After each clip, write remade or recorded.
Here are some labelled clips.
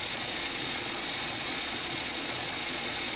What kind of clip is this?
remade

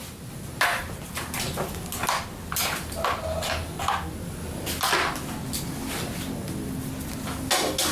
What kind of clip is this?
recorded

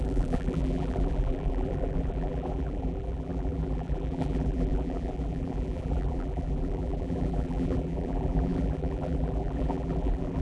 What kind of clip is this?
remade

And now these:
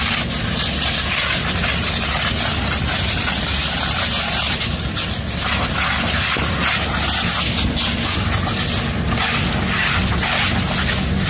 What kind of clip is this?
recorded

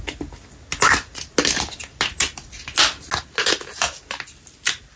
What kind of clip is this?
recorded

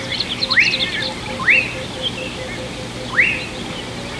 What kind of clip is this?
recorded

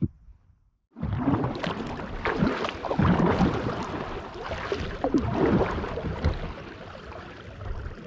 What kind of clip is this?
recorded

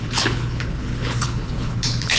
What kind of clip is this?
remade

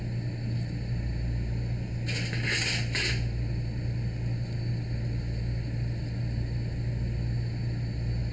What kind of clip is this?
recorded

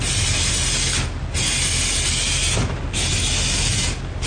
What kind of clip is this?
recorded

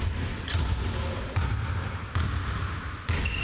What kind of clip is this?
recorded